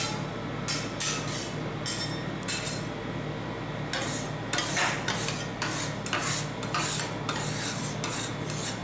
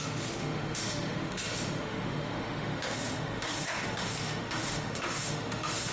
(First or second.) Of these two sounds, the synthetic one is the second